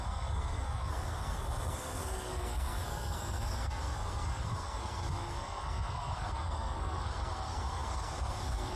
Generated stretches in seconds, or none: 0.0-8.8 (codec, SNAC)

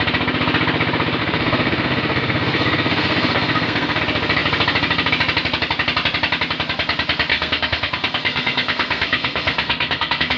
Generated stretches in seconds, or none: 1.2-4.0 (codec, SNAC); 7.3-10.4

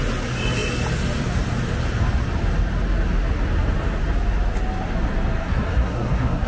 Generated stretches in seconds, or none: 5.4-6.5 (codec, SNAC)

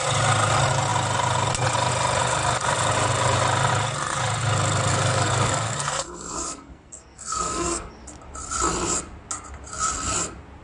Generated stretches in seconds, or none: 4.9-7.9 (codec, SNAC)

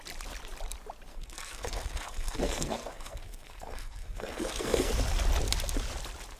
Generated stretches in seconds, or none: 1.1-4.9 (codec, SNAC)

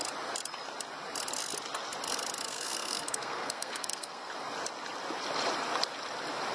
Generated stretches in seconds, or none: 2.4-4.3 (codec, SNAC)

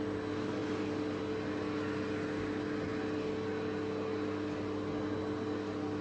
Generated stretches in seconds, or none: none